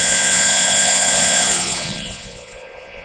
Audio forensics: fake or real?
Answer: fake